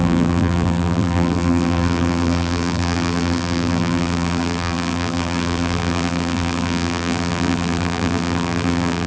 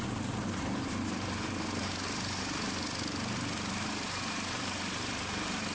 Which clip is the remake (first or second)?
first